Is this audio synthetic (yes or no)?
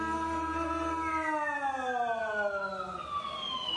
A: no